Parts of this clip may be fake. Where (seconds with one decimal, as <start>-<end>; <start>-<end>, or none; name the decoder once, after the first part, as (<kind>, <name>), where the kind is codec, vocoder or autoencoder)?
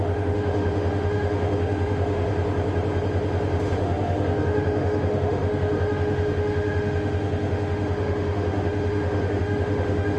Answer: 0.0-2.3 (autoencoder, DAC-VAE); 3.6-10.2